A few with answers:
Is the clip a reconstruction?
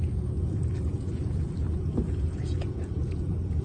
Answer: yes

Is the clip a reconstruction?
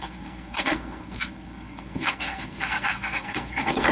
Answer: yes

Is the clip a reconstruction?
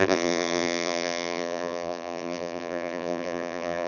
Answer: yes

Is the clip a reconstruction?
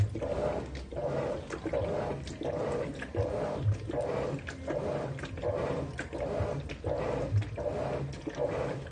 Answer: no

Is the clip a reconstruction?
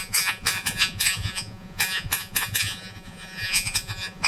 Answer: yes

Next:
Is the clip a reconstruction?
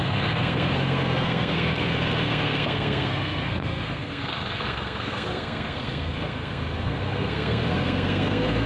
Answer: yes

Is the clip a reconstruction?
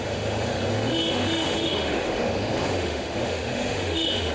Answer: yes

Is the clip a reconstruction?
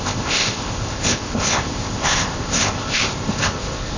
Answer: yes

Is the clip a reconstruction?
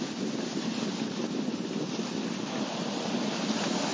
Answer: no